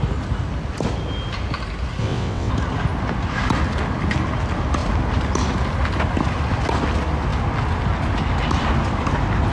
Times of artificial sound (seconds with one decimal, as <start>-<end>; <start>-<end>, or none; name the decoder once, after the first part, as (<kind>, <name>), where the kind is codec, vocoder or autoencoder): 2.0-2.5 (vocoder, WaveNeXt)